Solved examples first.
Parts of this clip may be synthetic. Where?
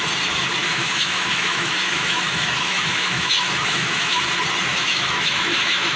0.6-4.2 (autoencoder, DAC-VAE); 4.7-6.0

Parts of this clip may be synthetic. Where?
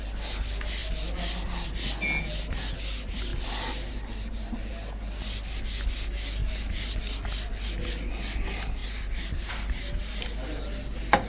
3.3-4.7 (vocoder, BigVGAN v2)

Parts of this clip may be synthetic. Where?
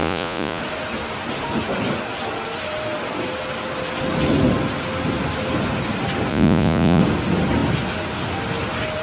0.0-0.6 (vocoder, Vocos); 6.3-7.0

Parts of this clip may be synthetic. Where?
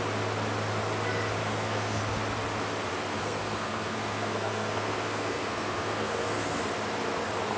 1.4-2.0 (codec, SNAC); 3.1-6.6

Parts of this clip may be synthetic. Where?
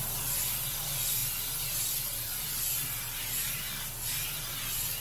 none